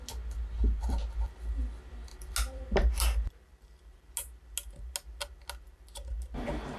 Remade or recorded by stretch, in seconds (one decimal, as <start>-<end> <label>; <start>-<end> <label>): 0.0-6.8 recorded